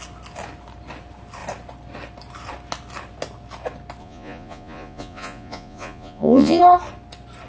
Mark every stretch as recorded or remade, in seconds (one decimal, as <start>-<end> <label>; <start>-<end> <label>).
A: 0.0-4.0 recorded; 4.0-6.6 remade; 6.6-7.5 recorded

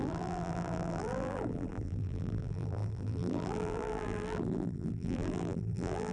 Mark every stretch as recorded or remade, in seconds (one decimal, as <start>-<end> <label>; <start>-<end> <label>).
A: 0.0-6.1 remade

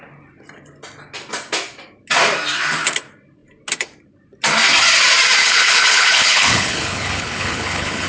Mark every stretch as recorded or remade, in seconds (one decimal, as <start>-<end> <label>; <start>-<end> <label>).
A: 0.0-5.4 recorded; 5.4-8.1 remade

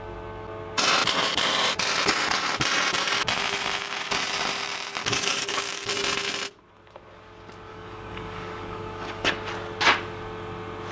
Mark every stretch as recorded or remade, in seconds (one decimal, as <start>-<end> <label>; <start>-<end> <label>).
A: 0.0-5.0 recorded; 5.0-5.9 remade; 5.9-7.7 recorded; 7.7-9.3 remade; 9.3-10.9 recorded

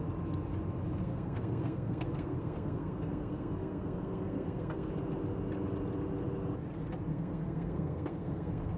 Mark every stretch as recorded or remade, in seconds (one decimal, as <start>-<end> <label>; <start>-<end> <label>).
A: 0.0-1.0 recorded; 1.0-4.9 remade; 4.9-7.1 recorded; 7.1-8.8 remade